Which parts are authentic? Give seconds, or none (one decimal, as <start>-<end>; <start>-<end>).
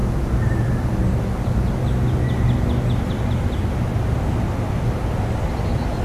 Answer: 0.0-6.0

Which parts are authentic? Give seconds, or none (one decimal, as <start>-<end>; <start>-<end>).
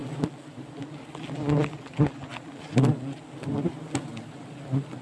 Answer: 0.0-5.0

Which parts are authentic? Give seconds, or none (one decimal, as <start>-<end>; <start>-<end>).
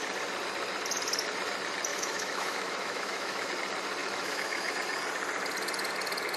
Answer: 0.0-1.9; 3.5-4.0; 4.7-6.4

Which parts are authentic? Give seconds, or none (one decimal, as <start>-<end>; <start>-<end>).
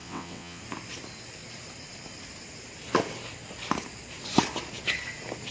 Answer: 0.6-5.5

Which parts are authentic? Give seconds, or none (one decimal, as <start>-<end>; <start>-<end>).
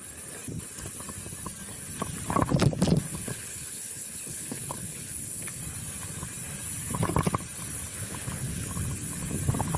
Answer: 0.0-3.1; 5.6-7.9; 8.7-9.8